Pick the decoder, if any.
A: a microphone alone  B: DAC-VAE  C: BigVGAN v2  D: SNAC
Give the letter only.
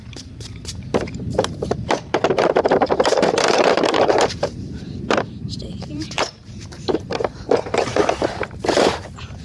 C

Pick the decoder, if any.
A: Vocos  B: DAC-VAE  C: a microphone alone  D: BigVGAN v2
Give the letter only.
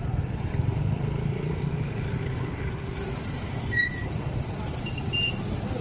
D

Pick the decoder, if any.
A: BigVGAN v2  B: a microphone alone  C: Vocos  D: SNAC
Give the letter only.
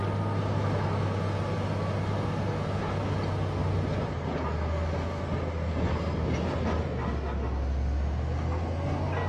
B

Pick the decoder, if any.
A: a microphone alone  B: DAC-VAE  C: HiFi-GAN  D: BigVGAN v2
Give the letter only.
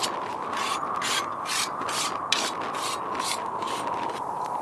A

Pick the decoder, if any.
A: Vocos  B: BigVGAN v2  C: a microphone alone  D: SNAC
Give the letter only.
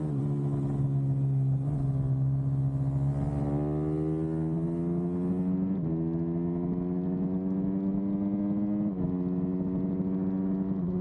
C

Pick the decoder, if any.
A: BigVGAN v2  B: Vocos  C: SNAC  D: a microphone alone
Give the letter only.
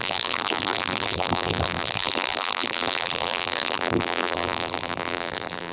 A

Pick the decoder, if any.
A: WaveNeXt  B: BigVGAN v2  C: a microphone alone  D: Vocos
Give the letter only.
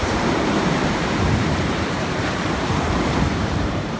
B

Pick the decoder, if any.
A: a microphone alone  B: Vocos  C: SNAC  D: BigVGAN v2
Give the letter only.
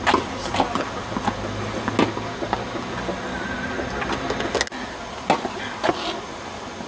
A